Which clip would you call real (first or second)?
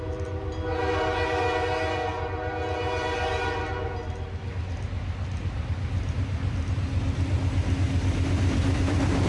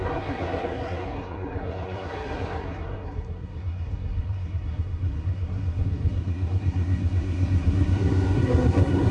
first